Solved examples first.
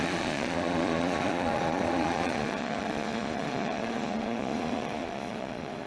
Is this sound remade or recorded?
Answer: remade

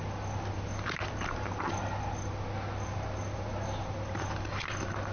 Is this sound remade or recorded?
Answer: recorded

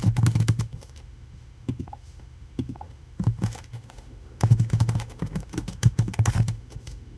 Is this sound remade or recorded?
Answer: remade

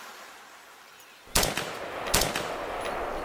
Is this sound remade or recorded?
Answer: recorded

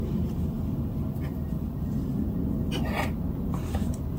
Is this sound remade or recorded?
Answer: recorded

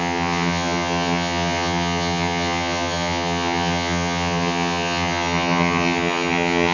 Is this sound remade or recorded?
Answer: remade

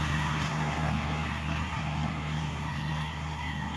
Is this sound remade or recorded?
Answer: remade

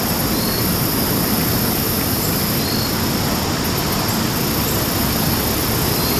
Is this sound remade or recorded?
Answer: recorded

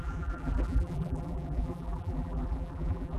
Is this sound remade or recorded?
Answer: remade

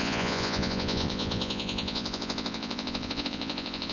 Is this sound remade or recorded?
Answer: remade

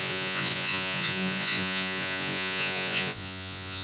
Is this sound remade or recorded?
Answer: remade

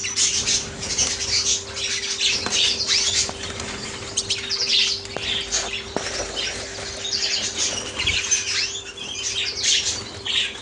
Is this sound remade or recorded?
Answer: recorded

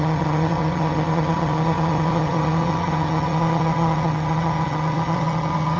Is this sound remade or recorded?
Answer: remade